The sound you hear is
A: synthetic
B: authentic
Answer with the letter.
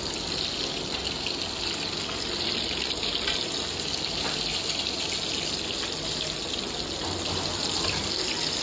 B